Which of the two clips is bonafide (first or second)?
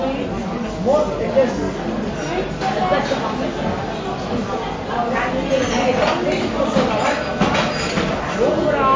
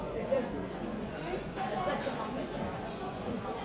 first